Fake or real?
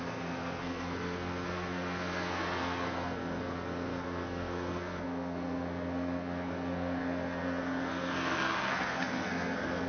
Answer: fake